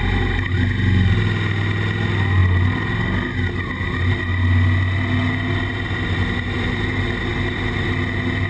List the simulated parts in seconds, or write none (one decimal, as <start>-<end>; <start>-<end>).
none